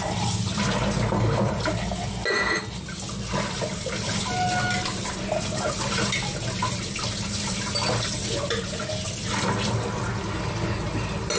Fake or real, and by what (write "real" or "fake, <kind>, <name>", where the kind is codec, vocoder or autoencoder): real